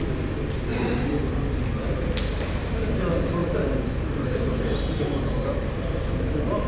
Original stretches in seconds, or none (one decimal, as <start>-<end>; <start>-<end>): 0.0-0.7; 3.0-3.4; 4.9-6.7